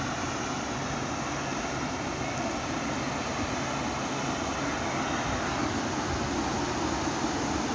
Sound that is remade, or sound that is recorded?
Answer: recorded